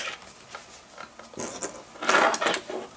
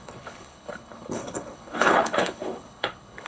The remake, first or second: second